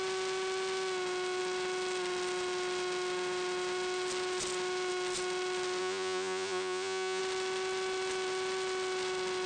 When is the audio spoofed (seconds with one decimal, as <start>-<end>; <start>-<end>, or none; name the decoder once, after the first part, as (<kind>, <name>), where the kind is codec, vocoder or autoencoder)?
5.8-7.2 (vocoder, Vocos)